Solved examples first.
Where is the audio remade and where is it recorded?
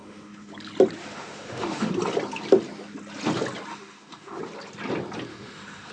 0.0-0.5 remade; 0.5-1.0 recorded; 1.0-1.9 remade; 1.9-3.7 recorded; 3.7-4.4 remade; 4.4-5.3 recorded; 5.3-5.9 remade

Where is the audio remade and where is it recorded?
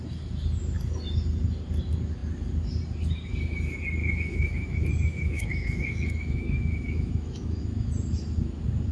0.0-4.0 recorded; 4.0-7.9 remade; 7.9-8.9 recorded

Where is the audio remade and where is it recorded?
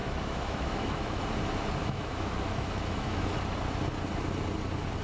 0.0-1.2 remade; 1.2-1.8 recorded; 1.8-3.4 remade; 3.4-5.0 recorded